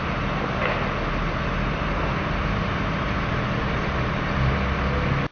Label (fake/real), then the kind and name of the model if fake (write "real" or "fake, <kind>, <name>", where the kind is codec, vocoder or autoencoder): real